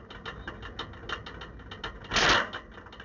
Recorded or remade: recorded